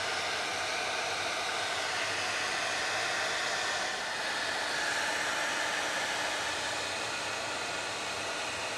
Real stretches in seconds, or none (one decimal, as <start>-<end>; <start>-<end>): 0.0-8.8